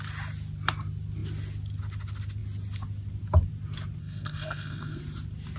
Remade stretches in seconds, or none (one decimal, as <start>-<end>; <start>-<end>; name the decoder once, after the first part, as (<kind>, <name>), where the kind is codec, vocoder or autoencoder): 4.0-5.0 (codec, SNAC)